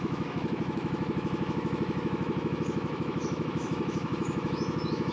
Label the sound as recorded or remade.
remade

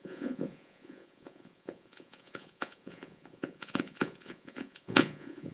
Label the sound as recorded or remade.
remade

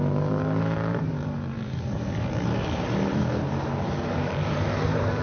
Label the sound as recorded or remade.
remade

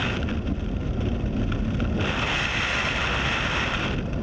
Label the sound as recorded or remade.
recorded